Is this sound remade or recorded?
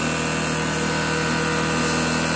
recorded